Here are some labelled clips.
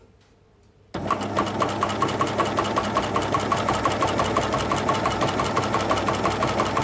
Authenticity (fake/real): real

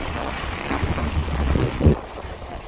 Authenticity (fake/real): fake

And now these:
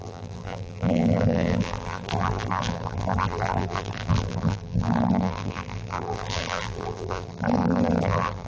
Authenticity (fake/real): fake